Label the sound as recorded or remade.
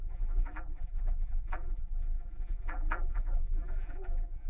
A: remade